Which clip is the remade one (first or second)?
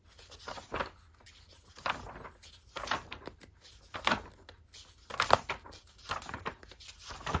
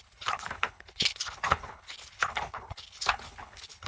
second